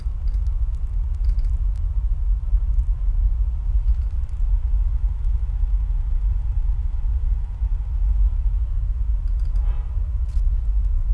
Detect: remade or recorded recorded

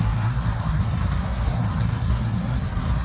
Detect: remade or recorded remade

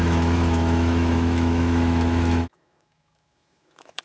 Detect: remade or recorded remade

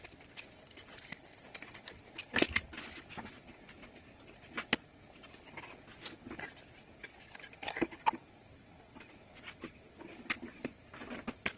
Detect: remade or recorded recorded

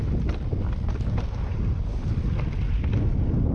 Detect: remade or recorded recorded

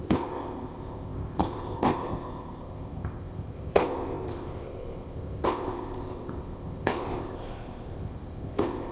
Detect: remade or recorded remade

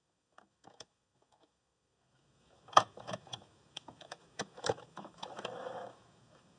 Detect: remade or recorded remade